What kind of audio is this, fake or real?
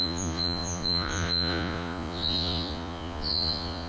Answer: fake